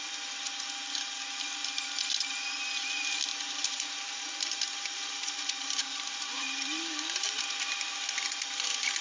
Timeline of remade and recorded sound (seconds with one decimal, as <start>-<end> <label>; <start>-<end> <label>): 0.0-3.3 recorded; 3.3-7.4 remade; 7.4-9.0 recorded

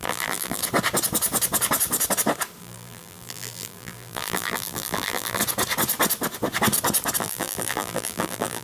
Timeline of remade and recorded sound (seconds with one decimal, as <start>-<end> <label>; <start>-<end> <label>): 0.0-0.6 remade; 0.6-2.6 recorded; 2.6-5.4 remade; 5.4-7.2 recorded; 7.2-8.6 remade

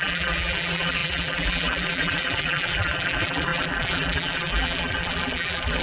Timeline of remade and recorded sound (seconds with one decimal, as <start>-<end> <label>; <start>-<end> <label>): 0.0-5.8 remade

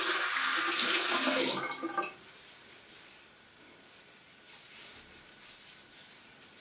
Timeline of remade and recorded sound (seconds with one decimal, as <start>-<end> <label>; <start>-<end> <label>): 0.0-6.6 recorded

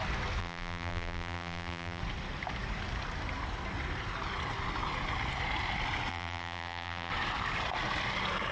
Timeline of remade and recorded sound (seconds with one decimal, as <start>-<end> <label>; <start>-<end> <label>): 0.0-0.4 recorded; 0.4-2.0 remade; 2.0-6.1 recorded; 6.1-7.1 remade; 7.1-8.5 recorded